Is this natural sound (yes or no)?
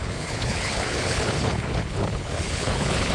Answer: no